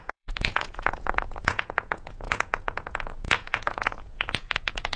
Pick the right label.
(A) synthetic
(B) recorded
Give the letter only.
A